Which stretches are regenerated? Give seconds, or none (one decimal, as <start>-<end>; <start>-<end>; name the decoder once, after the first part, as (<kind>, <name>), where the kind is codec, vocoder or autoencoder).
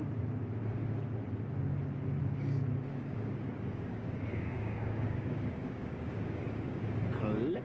2.2-6.8 (codec, DAC)